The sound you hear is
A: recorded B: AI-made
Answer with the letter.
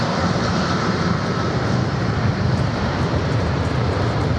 B